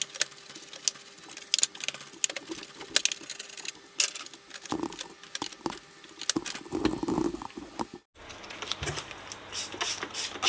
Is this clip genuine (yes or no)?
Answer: yes